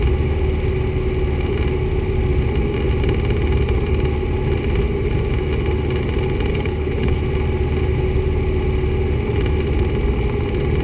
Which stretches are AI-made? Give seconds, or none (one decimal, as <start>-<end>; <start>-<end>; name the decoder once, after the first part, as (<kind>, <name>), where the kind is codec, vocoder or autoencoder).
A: 6.5-7.2 (codec, HILCodec)